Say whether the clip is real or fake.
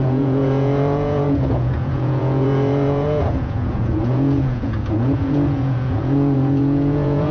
fake